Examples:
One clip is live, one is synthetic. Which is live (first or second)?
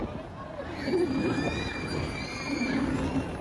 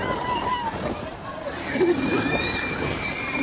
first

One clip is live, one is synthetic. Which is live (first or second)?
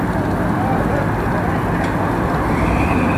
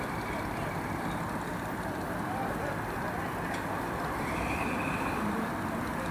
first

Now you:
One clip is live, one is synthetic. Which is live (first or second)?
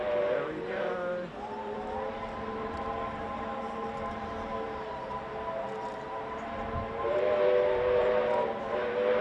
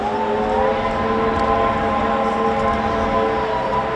second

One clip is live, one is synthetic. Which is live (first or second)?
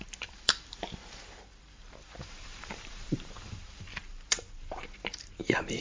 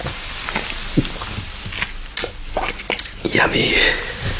second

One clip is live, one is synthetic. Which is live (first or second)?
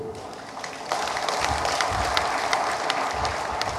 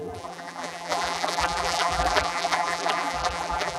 first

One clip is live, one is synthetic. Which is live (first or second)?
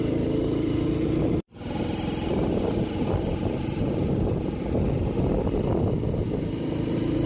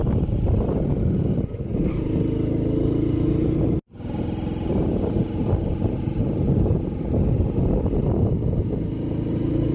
second